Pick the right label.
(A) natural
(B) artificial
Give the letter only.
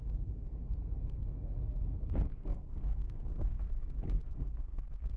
B